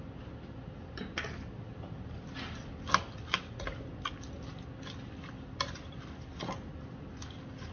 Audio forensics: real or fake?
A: real